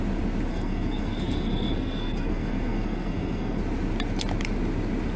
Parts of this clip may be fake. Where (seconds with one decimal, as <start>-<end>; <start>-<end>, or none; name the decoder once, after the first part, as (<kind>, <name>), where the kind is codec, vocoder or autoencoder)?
0.5-3.6 (codec, SNAC)